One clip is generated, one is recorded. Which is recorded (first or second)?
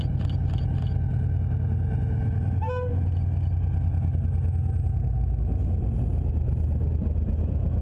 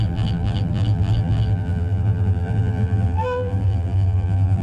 first